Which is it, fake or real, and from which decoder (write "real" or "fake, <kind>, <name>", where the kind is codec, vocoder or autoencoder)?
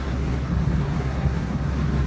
fake, codec, SNAC